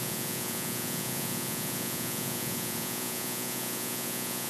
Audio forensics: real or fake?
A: fake